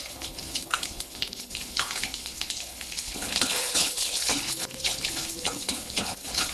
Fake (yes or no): yes